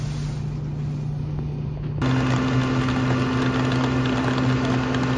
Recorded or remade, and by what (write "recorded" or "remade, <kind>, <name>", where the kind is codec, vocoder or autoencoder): recorded